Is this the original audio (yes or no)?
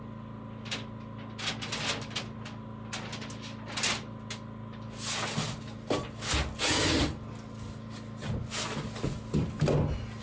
yes